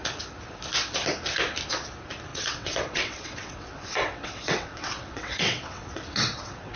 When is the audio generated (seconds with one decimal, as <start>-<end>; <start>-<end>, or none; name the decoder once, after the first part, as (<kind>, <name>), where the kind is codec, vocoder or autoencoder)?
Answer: 2.3-6.8 (vocoder, WaveNeXt)